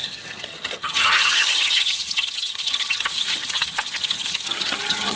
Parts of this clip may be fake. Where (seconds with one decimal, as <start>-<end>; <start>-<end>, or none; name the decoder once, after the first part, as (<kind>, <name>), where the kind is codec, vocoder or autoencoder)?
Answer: 0.0-5.2 (vocoder, HiFi-GAN)